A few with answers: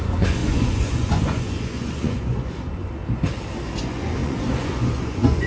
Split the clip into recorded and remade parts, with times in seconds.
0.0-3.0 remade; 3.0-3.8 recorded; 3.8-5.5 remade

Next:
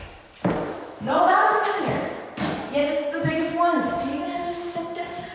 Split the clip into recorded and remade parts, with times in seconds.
0.0-0.6 recorded; 0.6-2.2 remade; 2.2-4.1 recorded; 4.1-4.8 remade; 4.8-5.3 recorded

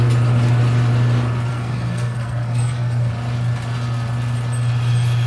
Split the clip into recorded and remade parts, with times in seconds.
0.0-1.5 recorded; 1.5-3.1 remade; 3.1-5.3 recorded

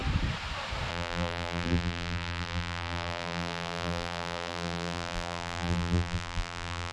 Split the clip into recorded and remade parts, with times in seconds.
0.0-0.9 recorded; 0.9-6.9 remade

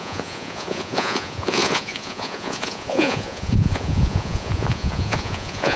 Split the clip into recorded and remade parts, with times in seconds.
0.0-5.8 remade